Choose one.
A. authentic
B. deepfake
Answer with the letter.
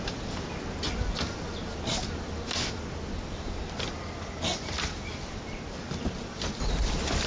A